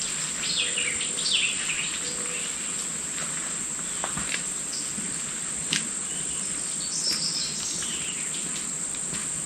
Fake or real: real